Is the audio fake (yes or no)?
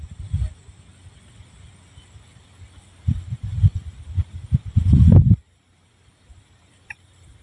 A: no